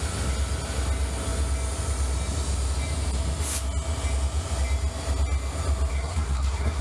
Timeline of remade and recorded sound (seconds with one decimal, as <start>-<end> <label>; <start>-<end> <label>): 0.0-5.9 recorded; 5.9-6.8 remade